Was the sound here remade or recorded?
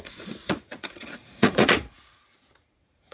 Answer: remade